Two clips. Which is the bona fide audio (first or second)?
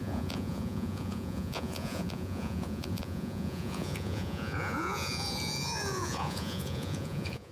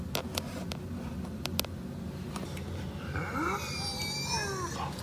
second